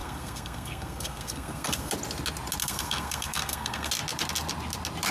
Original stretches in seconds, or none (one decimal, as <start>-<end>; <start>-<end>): 1.9-2.6; 3.9-5.1